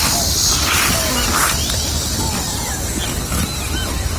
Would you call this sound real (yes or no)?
yes